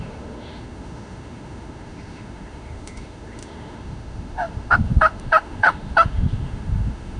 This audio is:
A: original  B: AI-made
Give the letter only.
B